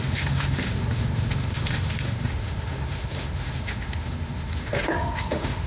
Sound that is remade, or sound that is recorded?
remade